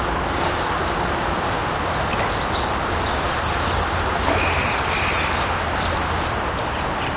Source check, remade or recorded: recorded